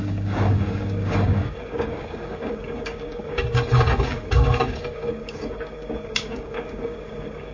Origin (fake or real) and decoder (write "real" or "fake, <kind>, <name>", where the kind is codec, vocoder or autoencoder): fake, codec, DAC